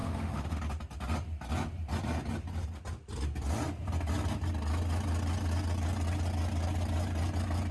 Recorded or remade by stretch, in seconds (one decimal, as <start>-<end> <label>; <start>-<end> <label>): 0.0-0.6 remade; 0.6-7.7 recorded